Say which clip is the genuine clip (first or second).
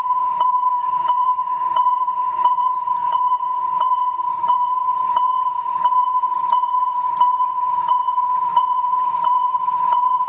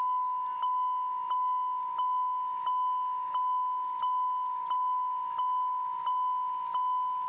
second